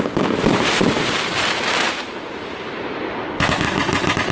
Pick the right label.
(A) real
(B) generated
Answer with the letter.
B